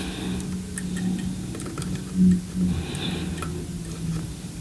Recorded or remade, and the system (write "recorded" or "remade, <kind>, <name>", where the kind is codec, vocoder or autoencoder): recorded